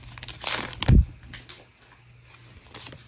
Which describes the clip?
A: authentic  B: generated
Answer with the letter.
A